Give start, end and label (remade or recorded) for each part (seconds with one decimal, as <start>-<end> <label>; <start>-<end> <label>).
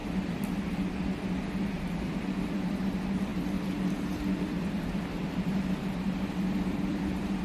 0.0-1.7 recorded; 1.7-7.4 remade